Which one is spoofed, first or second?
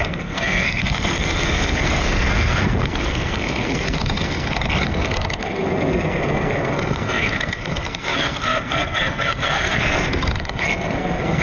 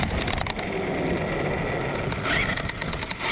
first